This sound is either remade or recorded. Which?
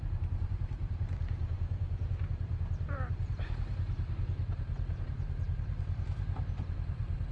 remade